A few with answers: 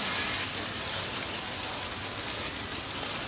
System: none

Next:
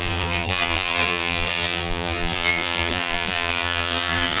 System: vocoder, BigVGAN v2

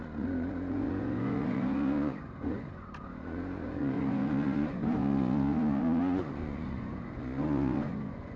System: vocoder, Vocos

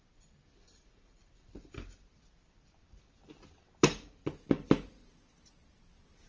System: none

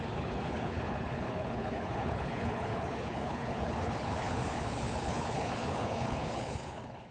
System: codec, HILCodec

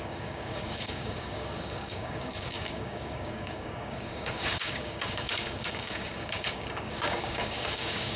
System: codec, DAC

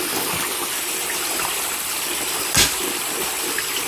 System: none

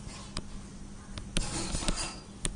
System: none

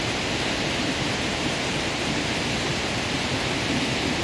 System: vocoder, BigVGAN v2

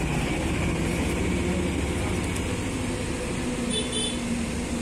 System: none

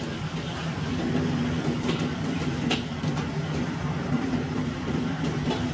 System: vocoder, BigVGAN v2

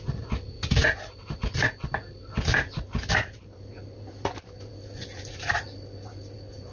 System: none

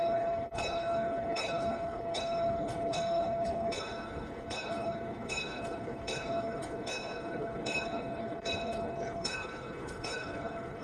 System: codec, HILCodec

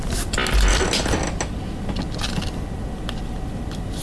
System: none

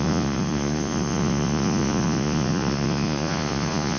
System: vocoder, Vocos